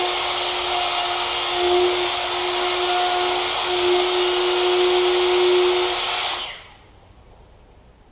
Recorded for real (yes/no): yes